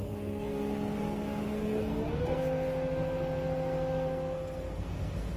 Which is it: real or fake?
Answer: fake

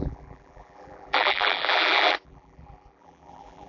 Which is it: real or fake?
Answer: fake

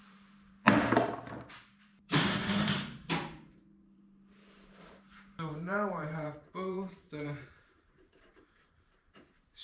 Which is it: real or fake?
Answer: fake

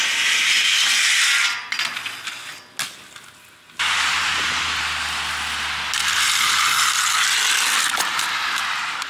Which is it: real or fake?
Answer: real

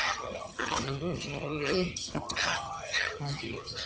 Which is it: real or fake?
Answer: fake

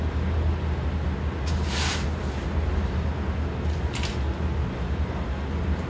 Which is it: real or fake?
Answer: real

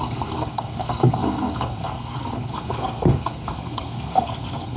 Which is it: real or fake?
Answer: fake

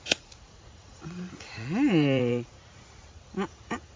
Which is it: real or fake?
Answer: fake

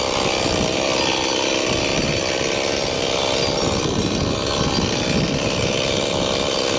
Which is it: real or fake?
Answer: real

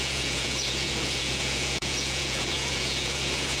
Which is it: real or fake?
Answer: fake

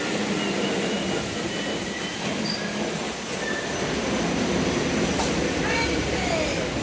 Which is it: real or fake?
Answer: real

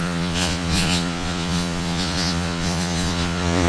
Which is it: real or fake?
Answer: fake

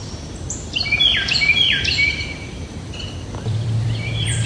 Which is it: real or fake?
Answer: fake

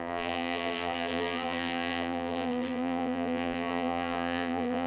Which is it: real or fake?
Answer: fake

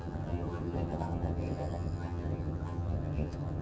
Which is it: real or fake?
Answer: fake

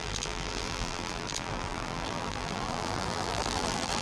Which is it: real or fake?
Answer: fake